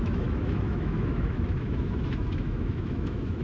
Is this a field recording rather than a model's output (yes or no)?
no